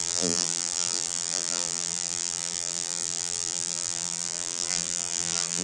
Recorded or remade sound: remade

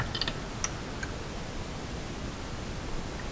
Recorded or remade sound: recorded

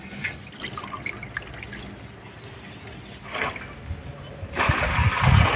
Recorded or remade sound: recorded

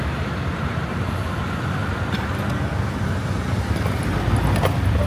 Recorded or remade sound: recorded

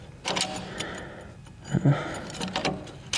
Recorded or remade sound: recorded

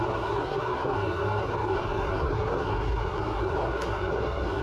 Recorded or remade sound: remade